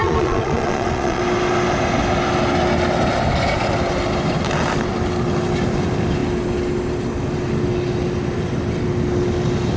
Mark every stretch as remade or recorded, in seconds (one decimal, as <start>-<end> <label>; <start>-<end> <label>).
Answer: 0.0-1.2 remade; 1.2-9.8 recorded

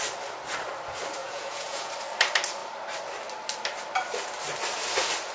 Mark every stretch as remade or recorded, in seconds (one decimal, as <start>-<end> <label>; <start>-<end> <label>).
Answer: 0.0-1.2 recorded; 1.2-1.9 remade; 1.9-5.3 recorded

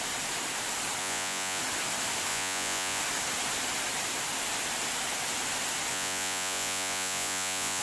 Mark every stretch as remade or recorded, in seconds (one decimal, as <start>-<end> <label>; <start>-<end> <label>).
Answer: 0.0-1.0 recorded; 1.0-1.6 remade; 1.6-2.3 recorded; 2.3-3.0 remade; 3.0-5.9 recorded; 5.9-7.8 remade

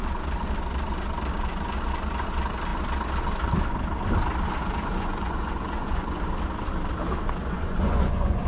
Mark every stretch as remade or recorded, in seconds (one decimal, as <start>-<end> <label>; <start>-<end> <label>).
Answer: 0.0-4.6 recorded; 4.6-6.2 remade; 6.2-7.4 recorded; 7.4-8.5 remade

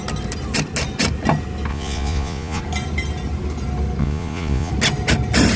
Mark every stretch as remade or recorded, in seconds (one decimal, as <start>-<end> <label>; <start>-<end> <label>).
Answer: 0.0-1.7 recorded; 1.7-2.6 remade; 2.6-4.0 recorded; 4.0-4.7 remade; 4.7-5.6 recorded

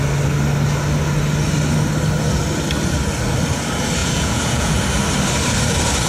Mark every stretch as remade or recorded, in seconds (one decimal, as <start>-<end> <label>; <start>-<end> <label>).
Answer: 0.0-4.0 recorded; 4.0-4.8 remade; 4.8-6.1 recorded

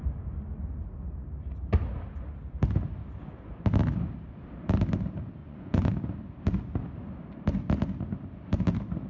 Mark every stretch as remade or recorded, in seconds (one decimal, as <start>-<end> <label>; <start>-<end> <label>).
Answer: 0.0-5.4 recorded; 5.4-5.9 remade; 5.9-9.1 recorded

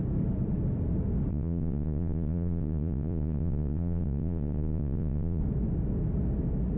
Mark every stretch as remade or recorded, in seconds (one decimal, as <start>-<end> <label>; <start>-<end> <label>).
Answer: 0.0-1.3 recorded; 1.3-5.4 remade; 5.4-6.8 recorded